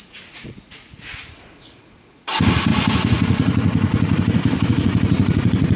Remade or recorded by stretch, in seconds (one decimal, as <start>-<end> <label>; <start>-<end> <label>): 0.0-5.8 remade